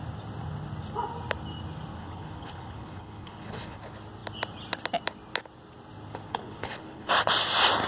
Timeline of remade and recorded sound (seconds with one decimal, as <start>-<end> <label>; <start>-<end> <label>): 0.0-2.0 recorded; 2.0-3.8 remade; 3.8-6.3 recorded; 6.3-7.1 remade; 7.1-7.9 recorded